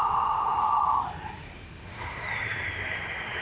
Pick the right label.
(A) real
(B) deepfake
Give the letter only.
A